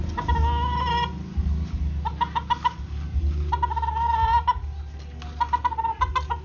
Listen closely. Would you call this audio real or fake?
real